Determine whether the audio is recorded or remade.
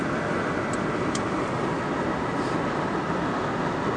recorded